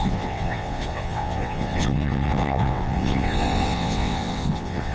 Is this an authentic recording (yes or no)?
no